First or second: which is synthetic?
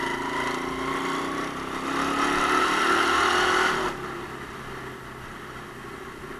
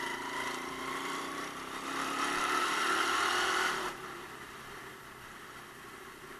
second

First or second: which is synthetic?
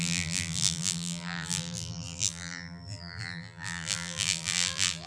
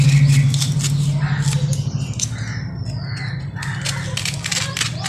first